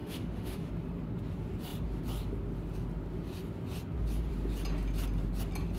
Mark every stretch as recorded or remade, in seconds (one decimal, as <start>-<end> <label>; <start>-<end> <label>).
0.0-0.7 remade; 0.7-5.8 recorded